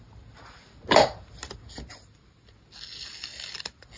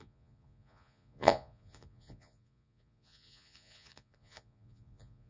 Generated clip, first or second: second